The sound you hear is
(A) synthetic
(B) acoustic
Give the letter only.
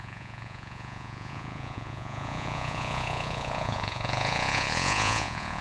A